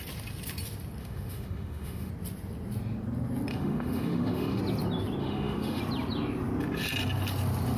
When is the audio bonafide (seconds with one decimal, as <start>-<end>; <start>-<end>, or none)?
0.0-1.0; 2.1-3.5; 4.6-5.2; 5.8-7.8